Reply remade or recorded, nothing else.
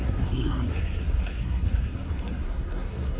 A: remade